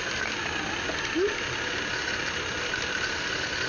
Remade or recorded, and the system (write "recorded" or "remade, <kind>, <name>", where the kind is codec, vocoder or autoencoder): recorded